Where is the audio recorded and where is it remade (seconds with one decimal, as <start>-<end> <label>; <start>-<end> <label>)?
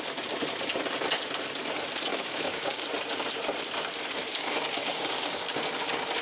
0.0-2.1 recorded; 2.1-2.8 remade; 2.8-4.3 recorded; 4.3-5.6 remade; 5.6-6.2 recorded